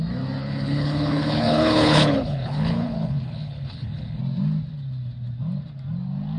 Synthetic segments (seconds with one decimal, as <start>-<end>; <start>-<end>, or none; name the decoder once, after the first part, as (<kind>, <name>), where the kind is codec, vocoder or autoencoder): 0.4-4.2 (codec, HILCodec)